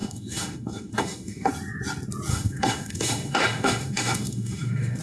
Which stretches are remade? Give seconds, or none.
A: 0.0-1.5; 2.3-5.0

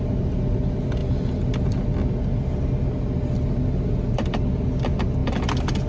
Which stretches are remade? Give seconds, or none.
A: none

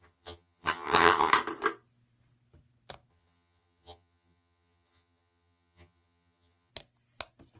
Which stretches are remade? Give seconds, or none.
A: 0.0-1.3; 3.1-6.7

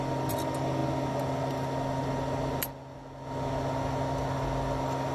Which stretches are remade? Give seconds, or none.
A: none

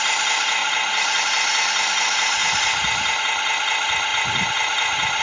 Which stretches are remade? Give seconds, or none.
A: 0.6-1.2; 4.1-5.2